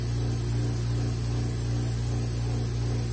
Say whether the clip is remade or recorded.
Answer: recorded